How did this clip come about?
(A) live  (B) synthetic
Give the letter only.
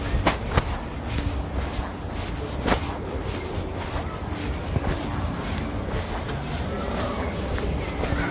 A